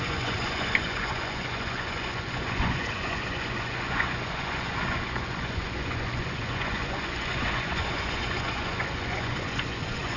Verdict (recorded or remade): remade